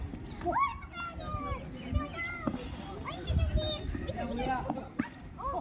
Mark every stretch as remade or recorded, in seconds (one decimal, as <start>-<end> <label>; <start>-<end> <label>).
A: 0.0-0.7 remade; 0.7-4.1 recorded; 4.1-5.6 remade